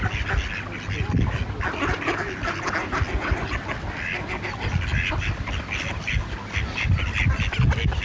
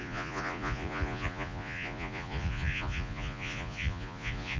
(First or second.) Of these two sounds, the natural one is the first